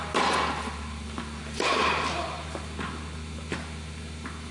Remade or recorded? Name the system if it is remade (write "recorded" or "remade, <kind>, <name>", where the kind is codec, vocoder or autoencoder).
recorded